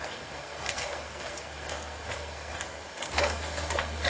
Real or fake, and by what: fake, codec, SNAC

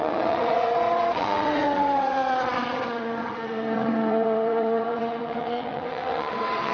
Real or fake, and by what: fake, vocoder, WaveNeXt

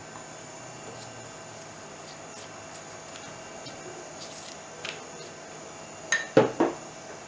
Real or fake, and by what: real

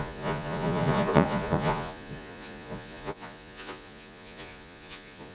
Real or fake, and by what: fake, vocoder, Vocos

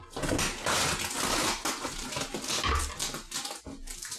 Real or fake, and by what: real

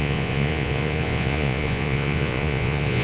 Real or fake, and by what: fake, vocoder, Vocos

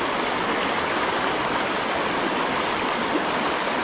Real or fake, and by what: real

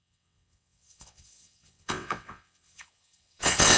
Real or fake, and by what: fake, vocoder, WaveNeXt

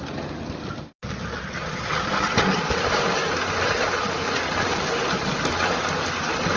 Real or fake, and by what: real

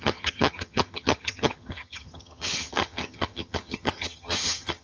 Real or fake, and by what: fake, vocoder, HiFi-GAN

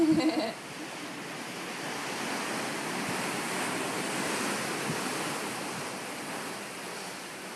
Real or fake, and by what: real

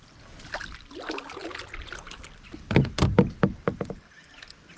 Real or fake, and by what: real